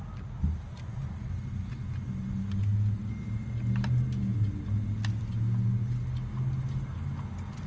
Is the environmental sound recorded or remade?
recorded